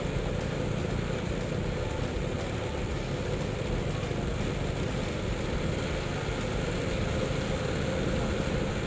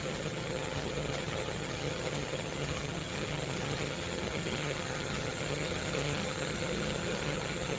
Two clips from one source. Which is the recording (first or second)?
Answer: first